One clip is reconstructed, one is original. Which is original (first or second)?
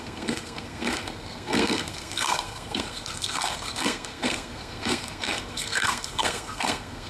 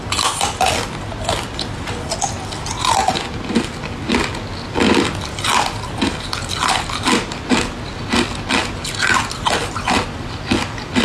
second